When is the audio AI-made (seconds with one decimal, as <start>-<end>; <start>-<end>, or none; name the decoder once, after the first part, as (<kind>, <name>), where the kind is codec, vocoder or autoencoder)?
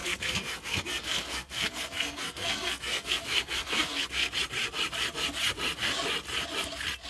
0.0-4.3 (codec, SNAC)